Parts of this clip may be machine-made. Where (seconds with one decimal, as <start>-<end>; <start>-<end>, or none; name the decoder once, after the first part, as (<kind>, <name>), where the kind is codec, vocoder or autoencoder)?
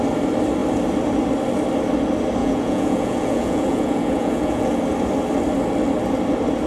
2.4-4.8 (vocoder, Vocos)